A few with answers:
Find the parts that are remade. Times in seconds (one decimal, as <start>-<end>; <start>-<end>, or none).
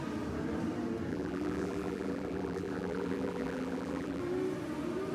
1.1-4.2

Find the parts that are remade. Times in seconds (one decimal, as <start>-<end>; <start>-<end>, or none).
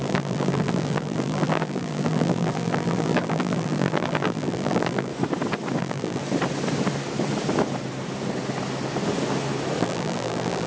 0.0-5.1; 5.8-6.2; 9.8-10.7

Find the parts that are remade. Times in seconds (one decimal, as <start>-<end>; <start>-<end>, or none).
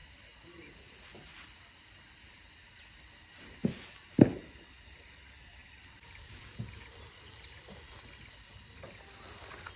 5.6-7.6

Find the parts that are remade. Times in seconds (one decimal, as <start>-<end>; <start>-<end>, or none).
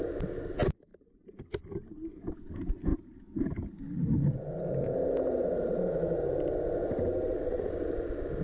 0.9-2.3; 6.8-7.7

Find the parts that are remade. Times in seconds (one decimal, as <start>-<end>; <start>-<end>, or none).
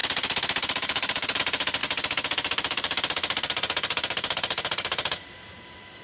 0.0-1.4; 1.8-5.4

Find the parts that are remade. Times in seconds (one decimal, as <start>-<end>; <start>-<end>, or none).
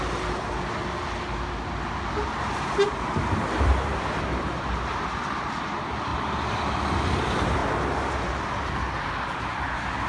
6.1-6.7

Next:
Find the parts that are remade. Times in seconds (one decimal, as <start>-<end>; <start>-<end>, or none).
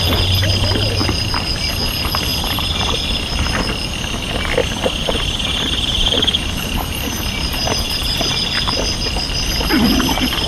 1.0-1.5; 2.3-3.0; 4.6-8.3